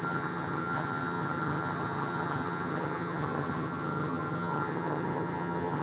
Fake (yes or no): yes